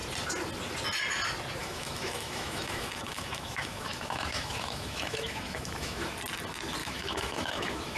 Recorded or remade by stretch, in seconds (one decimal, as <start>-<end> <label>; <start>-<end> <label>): 0.0-1.6 recorded; 1.6-6.1 remade; 6.1-6.8 recorded; 6.8-8.0 remade